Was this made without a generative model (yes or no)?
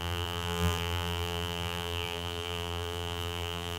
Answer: no